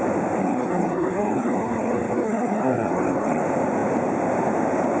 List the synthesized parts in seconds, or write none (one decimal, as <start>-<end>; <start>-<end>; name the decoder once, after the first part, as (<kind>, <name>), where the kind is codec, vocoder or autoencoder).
0.4-3.4 (codec, SNAC)